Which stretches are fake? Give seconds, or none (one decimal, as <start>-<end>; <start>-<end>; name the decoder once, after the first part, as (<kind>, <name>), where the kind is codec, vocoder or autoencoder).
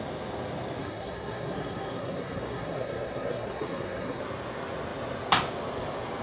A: 0.8-4.2 (codec, SNAC)